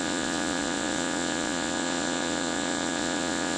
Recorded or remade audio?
remade